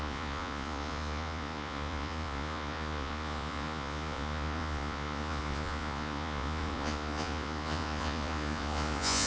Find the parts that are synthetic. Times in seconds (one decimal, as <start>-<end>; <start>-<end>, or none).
0.0-9.3